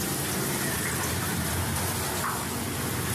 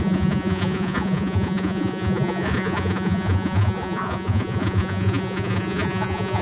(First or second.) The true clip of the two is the first